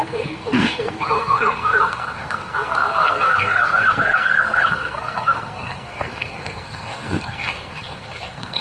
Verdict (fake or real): fake